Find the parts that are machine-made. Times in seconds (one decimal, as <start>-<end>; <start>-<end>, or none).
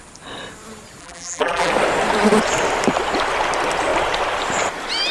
1.0-1.7